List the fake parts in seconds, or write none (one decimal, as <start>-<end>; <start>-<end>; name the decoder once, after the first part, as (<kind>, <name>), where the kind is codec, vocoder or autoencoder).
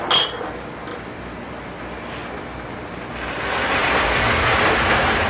none